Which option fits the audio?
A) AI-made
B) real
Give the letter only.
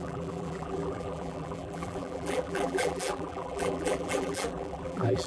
A